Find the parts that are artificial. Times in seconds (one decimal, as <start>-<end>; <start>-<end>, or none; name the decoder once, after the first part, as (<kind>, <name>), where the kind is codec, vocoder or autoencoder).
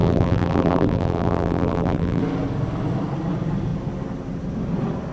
0.0-2.2 (vocoder, BigVGAN v2)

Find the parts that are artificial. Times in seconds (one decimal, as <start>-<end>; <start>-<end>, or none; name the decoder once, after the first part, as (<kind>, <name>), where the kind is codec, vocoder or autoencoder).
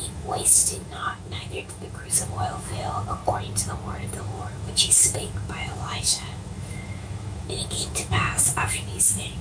0.0-3.2 (autoencoder, DAC-VAE); 4.2-9.4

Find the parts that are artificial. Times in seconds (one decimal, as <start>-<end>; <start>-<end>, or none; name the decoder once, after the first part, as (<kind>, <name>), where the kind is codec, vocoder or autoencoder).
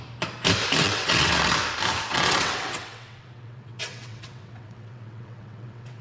0.8-1.5 (vocoder, WaveNeXt); 2.1-6.0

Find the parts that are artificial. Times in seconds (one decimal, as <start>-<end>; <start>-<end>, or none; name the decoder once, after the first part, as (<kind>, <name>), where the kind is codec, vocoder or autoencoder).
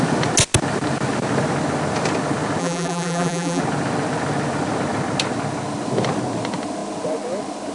2.6-3.6 (vocoder, BigVGAN v2)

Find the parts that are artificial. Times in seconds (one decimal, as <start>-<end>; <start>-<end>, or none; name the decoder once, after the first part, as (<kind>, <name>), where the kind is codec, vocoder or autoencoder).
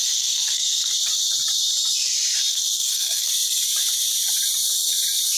0.0-0.9 (codec, SNAC); 2.5-3.3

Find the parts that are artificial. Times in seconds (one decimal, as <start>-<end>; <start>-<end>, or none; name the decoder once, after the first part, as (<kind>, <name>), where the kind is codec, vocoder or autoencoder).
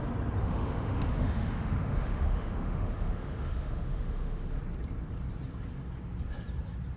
0.4-4.6 (autoencoder, DAC-VAE)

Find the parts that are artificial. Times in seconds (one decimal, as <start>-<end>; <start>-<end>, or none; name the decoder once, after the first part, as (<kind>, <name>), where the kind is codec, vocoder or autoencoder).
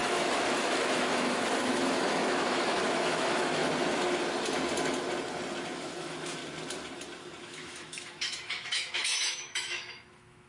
0.0-3.6 (autoencoder, DAC-VAE); 5.7-6.4; 7.4-10.5